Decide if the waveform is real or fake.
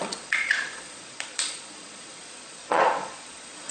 fake